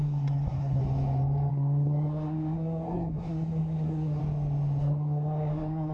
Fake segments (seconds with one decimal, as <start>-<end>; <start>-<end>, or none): 0.0-0.8; 1.5-4.2; 4.8-5.9